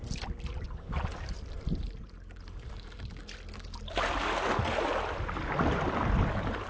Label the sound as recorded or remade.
recorded